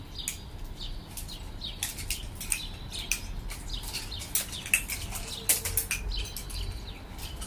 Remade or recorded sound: recorded